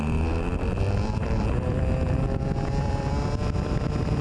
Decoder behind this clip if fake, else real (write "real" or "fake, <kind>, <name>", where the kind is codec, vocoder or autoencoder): fake, vocoder, BigVGAN v2